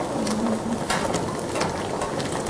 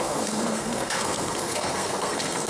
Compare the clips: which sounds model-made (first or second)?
second